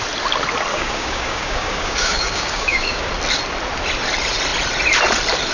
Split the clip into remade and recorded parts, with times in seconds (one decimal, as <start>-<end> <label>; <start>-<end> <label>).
0.0-0.7 recorded; 0.7-3.1 remade; 3.1-5.5 recorded